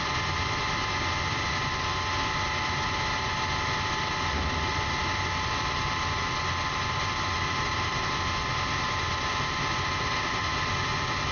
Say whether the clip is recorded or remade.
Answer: recorded